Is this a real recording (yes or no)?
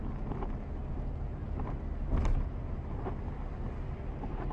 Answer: yes